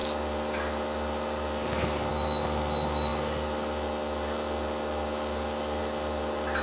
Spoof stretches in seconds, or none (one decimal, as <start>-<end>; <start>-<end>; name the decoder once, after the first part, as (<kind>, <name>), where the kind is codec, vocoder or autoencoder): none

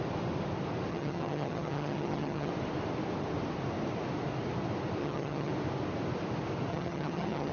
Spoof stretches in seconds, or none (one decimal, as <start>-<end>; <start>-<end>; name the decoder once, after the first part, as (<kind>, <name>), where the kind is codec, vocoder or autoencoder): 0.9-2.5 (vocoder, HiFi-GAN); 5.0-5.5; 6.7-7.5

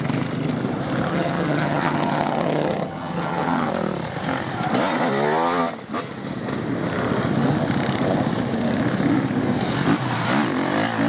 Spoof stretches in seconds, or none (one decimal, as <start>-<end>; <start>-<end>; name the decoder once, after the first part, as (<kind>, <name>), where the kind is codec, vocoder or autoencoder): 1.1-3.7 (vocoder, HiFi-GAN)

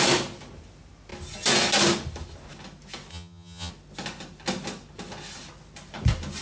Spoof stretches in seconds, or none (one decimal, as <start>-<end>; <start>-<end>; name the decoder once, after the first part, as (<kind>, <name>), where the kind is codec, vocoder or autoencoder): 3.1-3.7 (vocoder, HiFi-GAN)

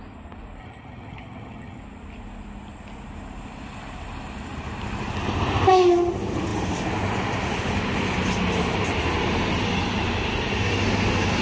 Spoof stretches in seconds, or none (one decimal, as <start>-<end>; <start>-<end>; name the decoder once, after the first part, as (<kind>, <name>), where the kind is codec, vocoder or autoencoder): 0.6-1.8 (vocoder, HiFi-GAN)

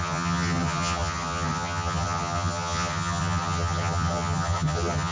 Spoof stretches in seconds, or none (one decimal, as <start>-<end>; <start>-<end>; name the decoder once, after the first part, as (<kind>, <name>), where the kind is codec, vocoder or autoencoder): 0.0-5.1 (vocoder, HiFi-GAN)